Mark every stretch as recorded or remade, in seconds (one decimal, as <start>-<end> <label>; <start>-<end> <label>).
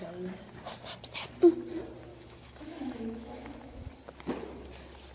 0.0-2.1 recorded; 2.1-3.9 remade; 3.9-5.1 recorded